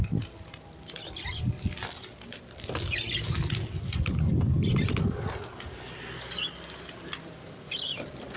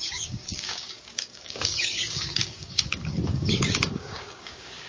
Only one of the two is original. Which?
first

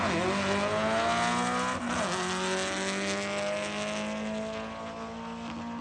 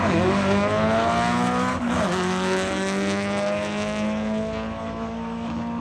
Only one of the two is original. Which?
first